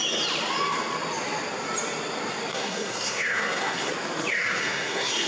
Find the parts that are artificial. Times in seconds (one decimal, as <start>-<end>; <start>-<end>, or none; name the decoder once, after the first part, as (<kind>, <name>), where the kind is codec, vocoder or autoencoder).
2.5-3.9 (codec, SNAC); 4.3-5.3